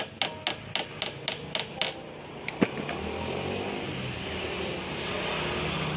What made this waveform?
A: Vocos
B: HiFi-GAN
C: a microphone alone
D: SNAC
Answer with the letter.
C